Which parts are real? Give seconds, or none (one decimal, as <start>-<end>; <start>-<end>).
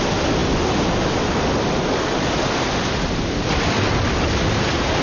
0.0-5.0